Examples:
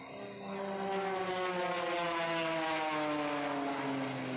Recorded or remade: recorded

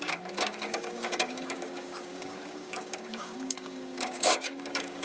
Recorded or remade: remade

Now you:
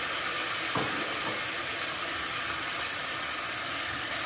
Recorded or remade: recorded